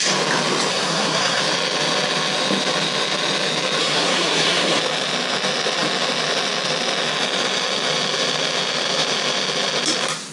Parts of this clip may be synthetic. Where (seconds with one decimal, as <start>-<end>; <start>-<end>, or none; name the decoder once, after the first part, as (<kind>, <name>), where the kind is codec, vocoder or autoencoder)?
0.7-1.4 (codec, SNAC); 3.8-4.8